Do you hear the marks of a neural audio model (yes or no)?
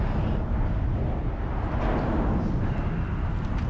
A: no